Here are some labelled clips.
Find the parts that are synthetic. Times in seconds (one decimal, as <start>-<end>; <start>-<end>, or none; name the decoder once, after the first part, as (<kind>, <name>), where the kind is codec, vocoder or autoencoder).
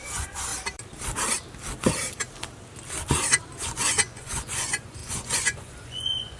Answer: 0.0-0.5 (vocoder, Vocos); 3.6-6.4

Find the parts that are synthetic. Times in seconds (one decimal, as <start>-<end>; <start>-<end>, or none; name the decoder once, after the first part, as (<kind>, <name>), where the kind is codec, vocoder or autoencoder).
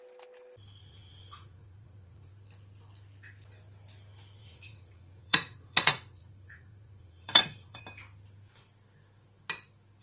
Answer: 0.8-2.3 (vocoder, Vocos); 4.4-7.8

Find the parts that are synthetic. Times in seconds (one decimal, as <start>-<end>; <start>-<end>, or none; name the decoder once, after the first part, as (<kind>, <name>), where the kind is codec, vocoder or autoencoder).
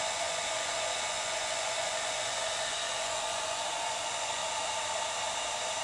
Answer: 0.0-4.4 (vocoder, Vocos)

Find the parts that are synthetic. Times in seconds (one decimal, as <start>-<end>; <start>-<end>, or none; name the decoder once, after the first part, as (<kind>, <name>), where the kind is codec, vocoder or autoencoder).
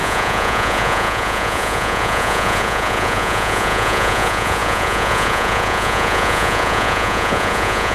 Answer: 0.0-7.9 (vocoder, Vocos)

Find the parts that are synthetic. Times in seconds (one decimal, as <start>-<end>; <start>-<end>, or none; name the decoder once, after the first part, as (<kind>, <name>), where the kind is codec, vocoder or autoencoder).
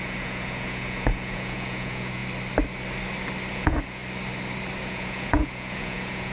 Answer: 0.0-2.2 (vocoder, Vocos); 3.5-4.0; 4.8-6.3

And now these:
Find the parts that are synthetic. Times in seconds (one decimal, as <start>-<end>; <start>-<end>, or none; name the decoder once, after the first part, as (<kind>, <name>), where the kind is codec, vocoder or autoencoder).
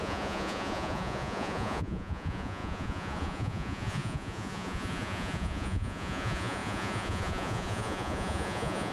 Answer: 0.0-8.9 (vocoder, Vocos)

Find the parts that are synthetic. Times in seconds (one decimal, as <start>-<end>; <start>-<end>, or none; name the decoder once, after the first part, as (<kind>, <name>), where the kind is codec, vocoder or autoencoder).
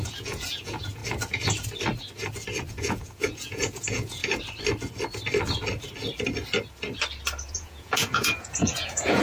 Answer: 0.0-1.0 (vocoder, Vocos); 2.7-4.2; 7.5-9.2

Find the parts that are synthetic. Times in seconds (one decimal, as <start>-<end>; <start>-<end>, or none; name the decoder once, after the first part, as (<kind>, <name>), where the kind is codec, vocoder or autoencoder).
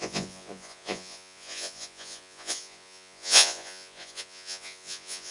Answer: 0.0-5.3 (vocoder, Vocos)